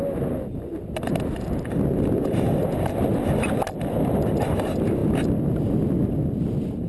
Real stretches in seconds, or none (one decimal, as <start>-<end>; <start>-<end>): 0.0-6.9